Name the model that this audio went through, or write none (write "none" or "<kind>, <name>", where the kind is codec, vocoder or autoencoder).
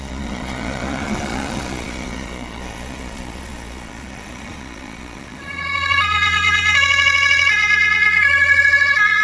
vocoder, Vocos